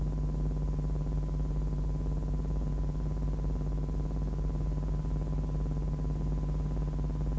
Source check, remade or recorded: recorded